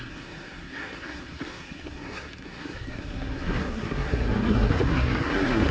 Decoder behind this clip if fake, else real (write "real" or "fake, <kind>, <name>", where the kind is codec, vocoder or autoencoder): fake, codec, SNAC